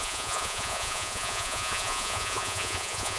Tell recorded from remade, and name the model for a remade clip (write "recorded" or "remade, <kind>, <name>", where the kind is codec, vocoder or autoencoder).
remade, vocoder, Vocos